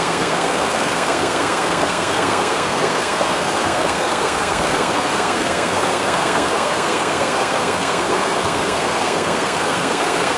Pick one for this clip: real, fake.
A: fake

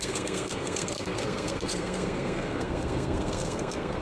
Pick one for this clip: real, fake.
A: fake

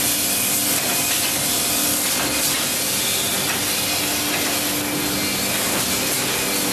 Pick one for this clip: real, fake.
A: real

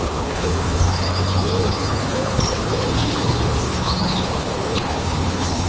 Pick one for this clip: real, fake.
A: fake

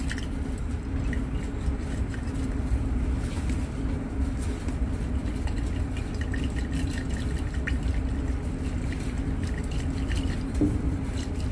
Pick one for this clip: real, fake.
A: real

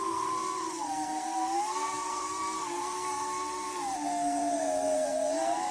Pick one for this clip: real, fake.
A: fake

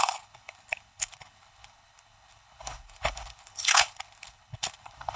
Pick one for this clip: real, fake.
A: fake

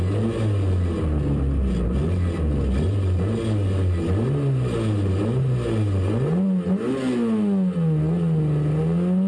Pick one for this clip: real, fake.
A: real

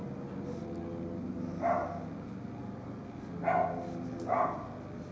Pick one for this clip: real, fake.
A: real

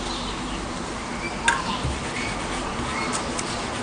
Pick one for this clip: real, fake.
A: real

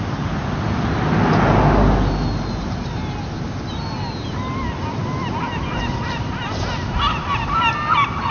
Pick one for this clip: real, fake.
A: real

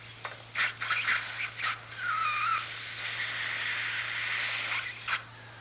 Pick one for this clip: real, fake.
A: real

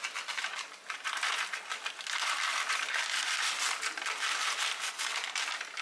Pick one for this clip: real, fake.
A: real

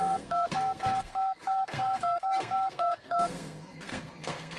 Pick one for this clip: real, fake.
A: fake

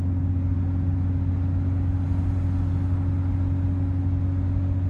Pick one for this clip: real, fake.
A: real